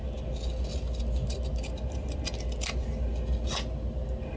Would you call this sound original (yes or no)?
yes